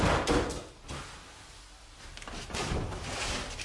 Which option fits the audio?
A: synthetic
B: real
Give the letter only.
B